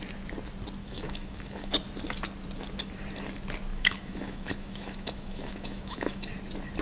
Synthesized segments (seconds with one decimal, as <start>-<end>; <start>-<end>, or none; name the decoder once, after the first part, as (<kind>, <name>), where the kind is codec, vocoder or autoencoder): 0.8-1.7 (autoencoder, DAC-VAE); 3.7-6.3